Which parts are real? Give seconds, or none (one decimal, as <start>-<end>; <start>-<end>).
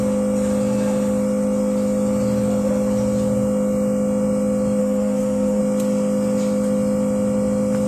0.0-4.8; 5.6-7.9